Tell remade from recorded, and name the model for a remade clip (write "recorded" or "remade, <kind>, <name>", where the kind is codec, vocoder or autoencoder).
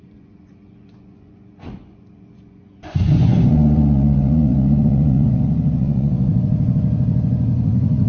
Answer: remade, vocoder, Vocos